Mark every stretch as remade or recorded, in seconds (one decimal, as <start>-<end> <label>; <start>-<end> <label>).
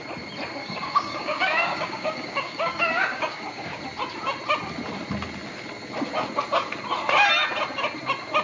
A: 0.0-0.6 recorded; 0.6-3.8 remade; 3.8-8.4 recorded